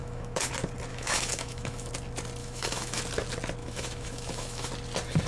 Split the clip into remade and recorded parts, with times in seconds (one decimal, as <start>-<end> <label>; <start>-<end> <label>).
0.0-0.5 remade; 0.5-0.9 recorded; 0.9-1.9 remade; 1.9-2.4 recorded; 2.4-3.0 remade; 3.0-3.6 recorded; 3.6-4.7 remade; 4.7-5.3 recorded